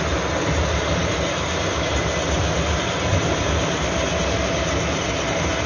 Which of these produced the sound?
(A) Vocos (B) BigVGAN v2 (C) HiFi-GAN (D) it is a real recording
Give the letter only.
D